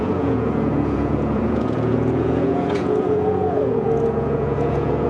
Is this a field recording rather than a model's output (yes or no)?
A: no